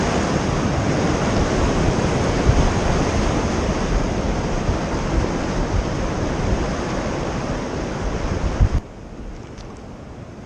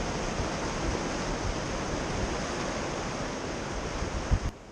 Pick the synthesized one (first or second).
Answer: first